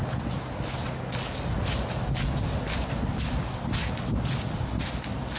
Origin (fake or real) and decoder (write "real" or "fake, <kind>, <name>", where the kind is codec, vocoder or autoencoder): real